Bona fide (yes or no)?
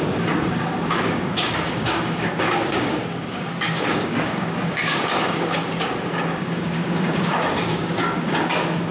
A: no